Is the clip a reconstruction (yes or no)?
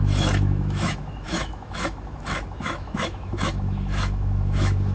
yes